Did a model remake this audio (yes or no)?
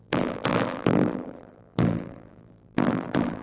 yes